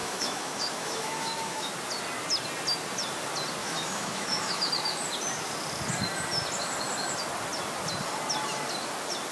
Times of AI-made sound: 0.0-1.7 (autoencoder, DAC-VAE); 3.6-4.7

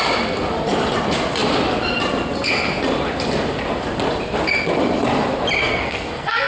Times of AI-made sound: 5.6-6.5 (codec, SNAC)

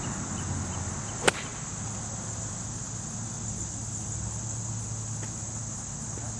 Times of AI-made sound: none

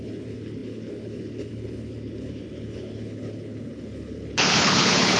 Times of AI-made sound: 0.0-5.2 (codec, HILCodec)

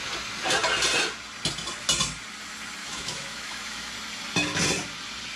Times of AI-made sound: 2.8-3.9 (autoencoder, DAC-VAE)

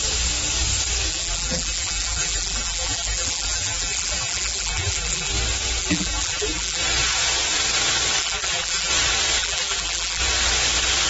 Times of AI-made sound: 1.1-5.3 (vocoder, BigVGAN v2); 5.8-6.8; 8.2-8.9; 9.4-10.2

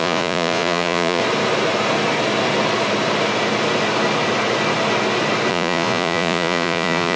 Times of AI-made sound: 0.0-1.2 (vocoder, Vocos); 5.5-7.2